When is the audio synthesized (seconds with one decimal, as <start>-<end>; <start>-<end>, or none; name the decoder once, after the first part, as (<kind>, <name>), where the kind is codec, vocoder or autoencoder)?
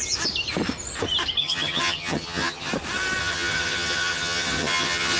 1.4-2.7 (vocoder, HiFi-GAN); 3.2-5.2